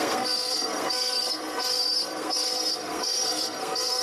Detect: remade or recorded remade